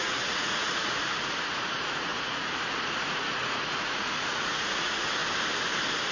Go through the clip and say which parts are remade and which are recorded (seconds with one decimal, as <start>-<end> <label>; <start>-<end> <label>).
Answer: 0.0-5.2 remade; 5.2-6.1 recorded